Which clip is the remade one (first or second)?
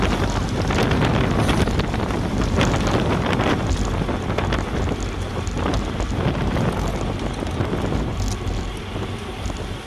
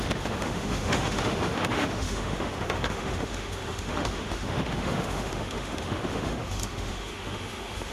second